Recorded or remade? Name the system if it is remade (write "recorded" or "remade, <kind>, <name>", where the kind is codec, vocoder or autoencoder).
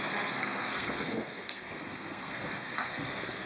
remade, codec, SNAC